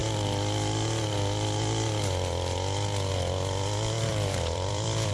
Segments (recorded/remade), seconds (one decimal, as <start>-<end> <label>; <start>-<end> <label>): 0.0-4.1 recorded; 4.1-5.1 remade